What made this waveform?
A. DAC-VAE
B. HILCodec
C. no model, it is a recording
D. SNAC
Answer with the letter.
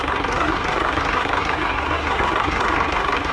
D